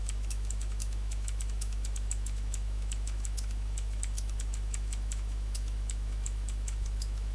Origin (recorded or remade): remade